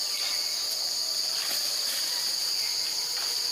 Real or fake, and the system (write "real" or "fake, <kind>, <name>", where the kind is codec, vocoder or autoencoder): real